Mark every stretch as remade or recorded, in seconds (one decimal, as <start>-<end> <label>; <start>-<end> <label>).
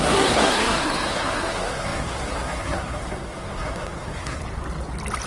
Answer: 0.0-4.4 remade; 4.4-5.3 recorded